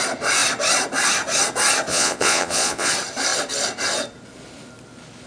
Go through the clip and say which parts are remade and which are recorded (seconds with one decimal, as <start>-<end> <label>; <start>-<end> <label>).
0.0-1.9 recorded; 1.9-2.9 remade; 2.9-5.3 recorded